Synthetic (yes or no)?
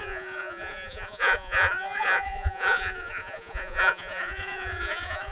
yes